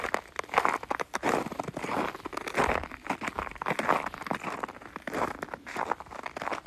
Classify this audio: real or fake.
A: real